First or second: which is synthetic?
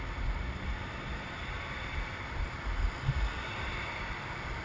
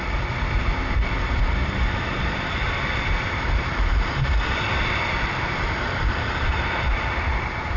second